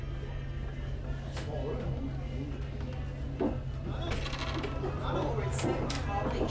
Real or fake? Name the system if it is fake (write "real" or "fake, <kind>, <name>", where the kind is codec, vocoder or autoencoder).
real